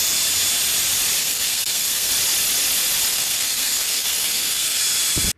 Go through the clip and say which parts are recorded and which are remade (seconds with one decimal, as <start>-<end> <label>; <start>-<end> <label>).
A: 0.0-1.2 recorded; 1.2-2.1 remade; 2.1-3.1 recorded; 3.1-4.8 remade; 4.8-5.4 recorded